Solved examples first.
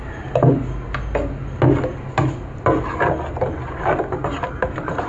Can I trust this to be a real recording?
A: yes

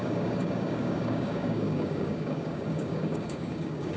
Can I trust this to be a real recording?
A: no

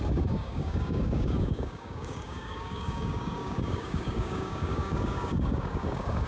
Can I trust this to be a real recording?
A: no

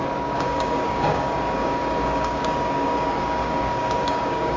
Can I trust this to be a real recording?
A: no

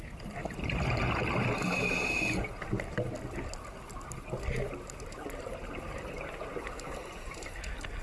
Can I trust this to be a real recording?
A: yes